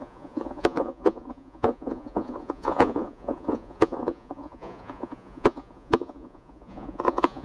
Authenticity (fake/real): fake